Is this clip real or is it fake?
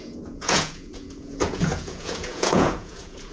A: fake